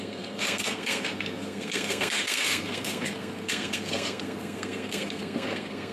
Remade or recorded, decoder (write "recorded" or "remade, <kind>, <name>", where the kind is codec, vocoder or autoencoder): remade, codec, SNAC